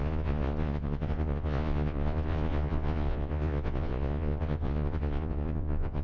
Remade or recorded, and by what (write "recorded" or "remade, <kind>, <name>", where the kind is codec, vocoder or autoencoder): remade, vocoder, Vocos